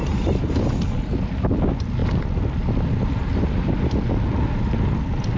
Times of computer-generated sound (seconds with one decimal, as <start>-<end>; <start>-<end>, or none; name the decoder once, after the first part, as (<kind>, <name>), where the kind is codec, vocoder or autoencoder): none